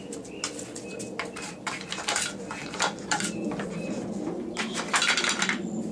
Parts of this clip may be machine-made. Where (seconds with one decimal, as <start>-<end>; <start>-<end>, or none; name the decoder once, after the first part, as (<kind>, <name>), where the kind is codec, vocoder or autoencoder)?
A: none